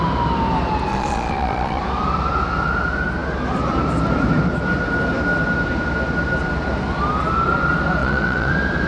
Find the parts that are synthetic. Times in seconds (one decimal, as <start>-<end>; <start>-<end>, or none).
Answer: 0.9-1.8; 8.0-8.5